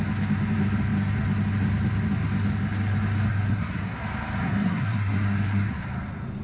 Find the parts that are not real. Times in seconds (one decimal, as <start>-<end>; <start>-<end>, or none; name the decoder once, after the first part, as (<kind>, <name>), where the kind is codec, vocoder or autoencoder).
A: 3.3-4.0 (codec, SNAC); 4.4-5.8